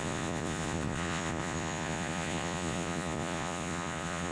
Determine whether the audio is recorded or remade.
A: remade